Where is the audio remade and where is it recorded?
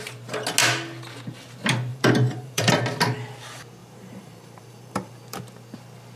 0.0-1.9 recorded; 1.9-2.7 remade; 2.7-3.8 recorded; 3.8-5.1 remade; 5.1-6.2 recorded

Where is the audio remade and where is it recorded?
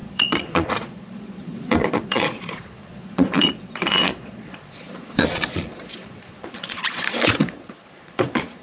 0.0-8.6 remade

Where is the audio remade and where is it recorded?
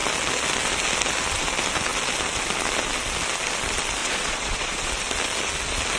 0.0-4.0 recorded; 4.0-4.9 remade; 4.9-6.0 recorded